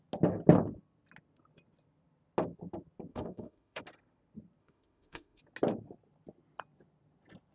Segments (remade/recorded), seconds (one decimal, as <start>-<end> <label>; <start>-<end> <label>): 0.0-3.1 recorded; 3.1-3.8 remade; 3.8-4.6 recorded; 4.6-5.4 remade; 5.4-7.5 recorded